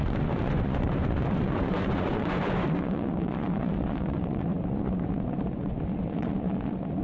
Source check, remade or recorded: remade